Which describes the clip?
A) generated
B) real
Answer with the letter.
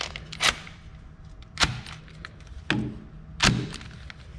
B